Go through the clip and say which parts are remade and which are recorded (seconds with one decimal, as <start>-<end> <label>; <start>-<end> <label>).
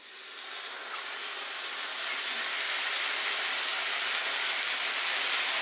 0.0-1.2 remade; 1.2-1.7 recorded; 1.7-5.6 remade